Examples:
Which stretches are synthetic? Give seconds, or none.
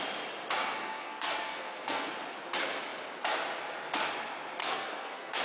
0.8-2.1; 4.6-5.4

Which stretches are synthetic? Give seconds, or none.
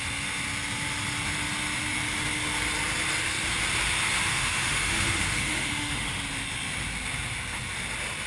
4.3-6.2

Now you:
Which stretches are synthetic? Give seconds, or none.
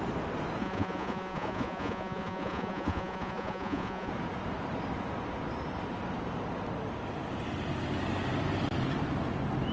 0.6-4.1